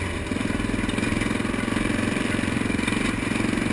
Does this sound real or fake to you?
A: real